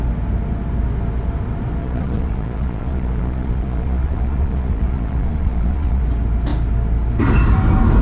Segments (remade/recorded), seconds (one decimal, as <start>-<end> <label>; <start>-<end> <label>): 0.0-1.8 recorded; 1.8-6.0 remade; 6.0-8.0 recorded